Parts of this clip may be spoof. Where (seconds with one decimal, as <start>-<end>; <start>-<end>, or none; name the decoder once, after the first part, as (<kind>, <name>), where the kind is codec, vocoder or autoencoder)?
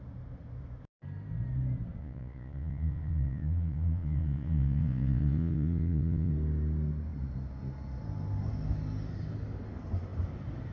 2.0-6.3 (vocoder, Vocos)